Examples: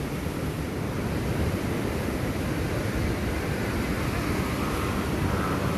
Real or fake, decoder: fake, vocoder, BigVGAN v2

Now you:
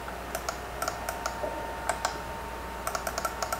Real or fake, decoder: real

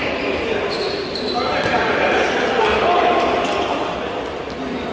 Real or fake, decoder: real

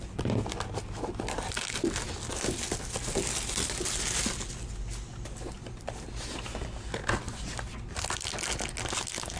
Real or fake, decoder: real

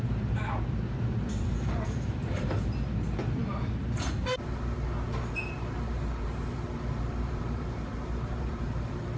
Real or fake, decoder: fake, vocoder, BigVGAN v2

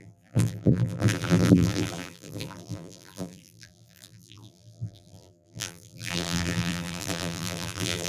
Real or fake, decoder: fake, vocoder, BigVGAN v2